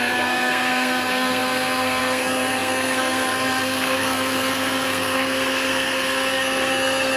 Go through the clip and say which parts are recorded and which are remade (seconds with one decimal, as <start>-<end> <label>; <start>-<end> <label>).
0.0-7.2 remade